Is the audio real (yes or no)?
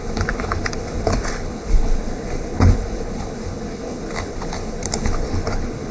no